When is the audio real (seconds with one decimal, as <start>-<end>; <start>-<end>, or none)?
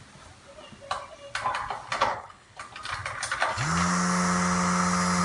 0.0-2.1; 2.6-5.2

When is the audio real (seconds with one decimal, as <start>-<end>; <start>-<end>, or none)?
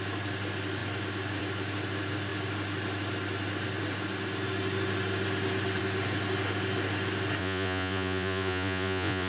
0.0-7.4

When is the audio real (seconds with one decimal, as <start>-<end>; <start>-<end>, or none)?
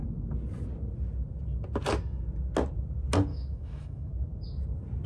0.0-3.3; 4.1-5.1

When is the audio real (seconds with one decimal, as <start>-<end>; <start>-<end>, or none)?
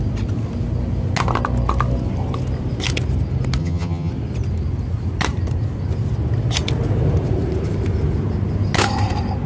0.0-3.6; 4.1-9.5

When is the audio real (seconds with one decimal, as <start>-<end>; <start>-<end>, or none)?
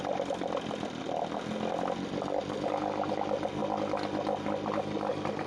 0.0-5.5